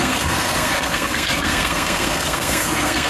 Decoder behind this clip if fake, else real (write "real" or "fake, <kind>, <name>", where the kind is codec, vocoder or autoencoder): fake, codec, SNAC